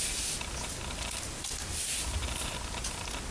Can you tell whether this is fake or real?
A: real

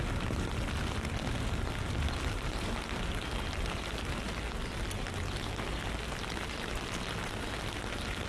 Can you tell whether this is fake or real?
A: real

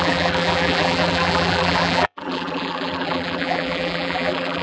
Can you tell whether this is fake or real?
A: fake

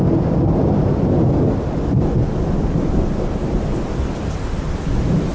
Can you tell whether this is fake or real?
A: real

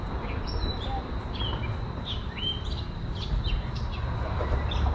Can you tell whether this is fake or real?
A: real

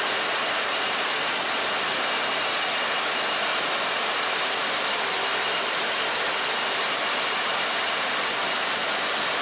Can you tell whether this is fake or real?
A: real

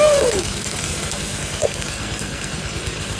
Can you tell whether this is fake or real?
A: fake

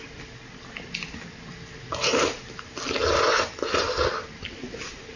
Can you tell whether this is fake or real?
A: real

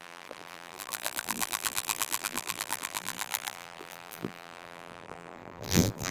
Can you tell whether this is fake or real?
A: fake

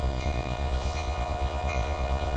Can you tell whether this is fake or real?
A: fake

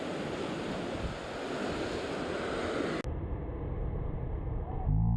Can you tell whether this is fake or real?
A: real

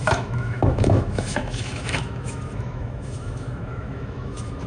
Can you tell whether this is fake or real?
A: fake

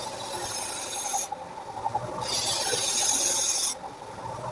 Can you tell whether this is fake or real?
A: real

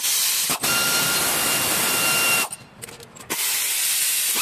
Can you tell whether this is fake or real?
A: real